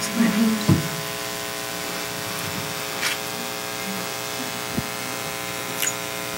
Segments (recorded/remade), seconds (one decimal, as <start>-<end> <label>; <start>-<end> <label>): 0.0-6.4 recorded